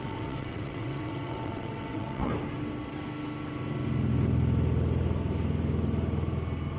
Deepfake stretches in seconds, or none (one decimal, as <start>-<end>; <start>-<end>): 0.0-2.3

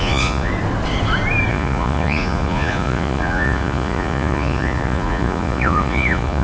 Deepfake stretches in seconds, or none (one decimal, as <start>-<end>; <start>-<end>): 0.0-0.5; 1.5-6.4

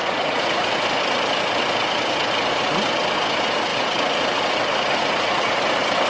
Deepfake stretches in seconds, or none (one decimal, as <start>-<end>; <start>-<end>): 0.0-0.7; 4.9-5.6

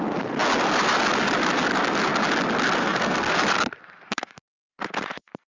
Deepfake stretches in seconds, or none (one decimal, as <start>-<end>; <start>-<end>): 2.8-3.4; 3.8-4.8

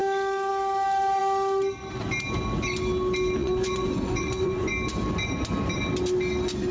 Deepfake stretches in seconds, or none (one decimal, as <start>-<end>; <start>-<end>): 3.4-4.7

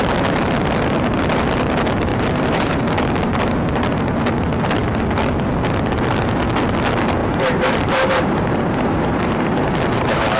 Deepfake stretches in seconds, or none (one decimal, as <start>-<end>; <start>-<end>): 2.1-2.8; 7.2-10.4

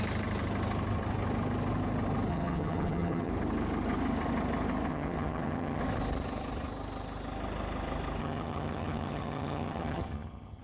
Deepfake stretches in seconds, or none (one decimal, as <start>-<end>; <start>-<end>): 2.3-3.3; 4.9-5.8; 8.2-10.6